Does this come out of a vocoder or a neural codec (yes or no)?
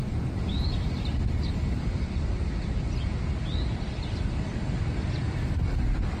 no